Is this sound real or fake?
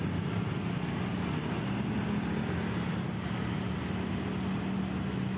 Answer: real